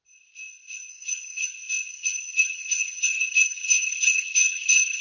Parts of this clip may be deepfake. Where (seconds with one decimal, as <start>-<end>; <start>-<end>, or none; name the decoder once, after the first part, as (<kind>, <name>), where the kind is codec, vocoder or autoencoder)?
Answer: 0.9-1.5 (vocoder, HiFi-GAN); 1.9-5.0